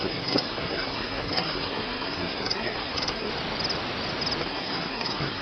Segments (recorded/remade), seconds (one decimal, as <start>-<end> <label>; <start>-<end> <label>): 0.0-3.3 remade; 3.3-4.4 recorded; 4.4-5.4 remade